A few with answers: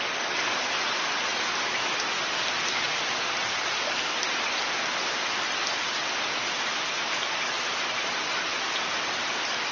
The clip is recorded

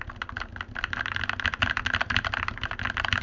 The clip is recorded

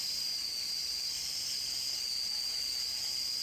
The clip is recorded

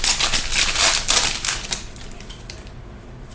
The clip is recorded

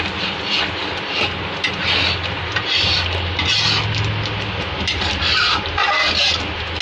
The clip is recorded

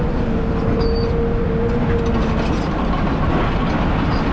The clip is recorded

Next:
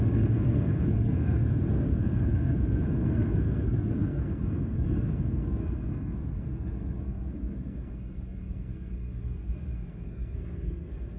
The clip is remade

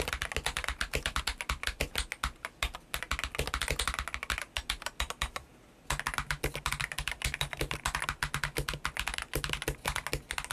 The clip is recorded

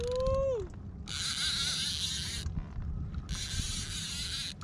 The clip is recorded